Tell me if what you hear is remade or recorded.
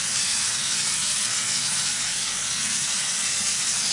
remade